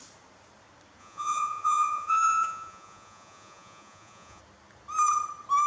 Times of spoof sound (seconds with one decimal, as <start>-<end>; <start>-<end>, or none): 1.0-4.4